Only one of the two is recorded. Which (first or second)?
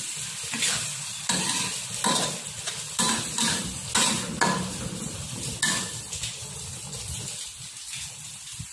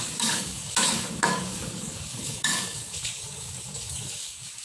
first